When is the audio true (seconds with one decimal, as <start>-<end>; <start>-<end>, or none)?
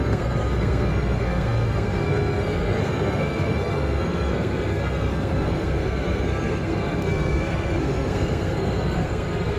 none